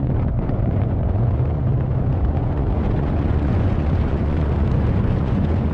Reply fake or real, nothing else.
fake